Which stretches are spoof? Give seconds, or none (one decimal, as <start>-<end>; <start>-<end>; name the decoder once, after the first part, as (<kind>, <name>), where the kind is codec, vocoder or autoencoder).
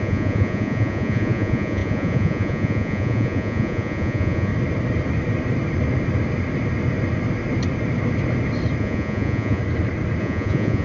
0.0-4.5 (vocoder, Vocos); 8.8-9.6; 10.2-10.8